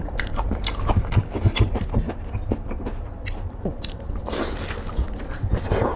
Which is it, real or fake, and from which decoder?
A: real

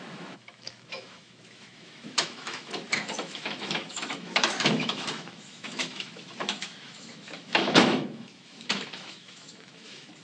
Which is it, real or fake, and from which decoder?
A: fake, autoencoder, DAC-VAE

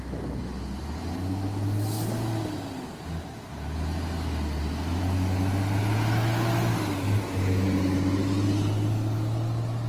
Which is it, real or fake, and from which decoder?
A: real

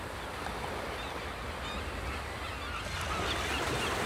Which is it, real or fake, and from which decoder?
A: real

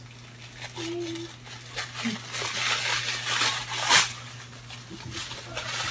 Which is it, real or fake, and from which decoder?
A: real